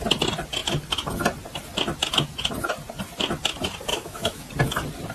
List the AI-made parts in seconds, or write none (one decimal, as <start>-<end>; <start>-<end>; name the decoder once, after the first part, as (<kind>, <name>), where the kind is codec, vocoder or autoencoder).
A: 3.9-4.5 (autoencoder, DAC-VAE)